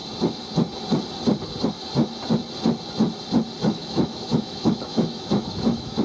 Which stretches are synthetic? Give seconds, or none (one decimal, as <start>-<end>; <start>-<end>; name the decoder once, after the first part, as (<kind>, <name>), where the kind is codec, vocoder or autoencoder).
3.6-6.0 (autoencoder, DAC-VAE)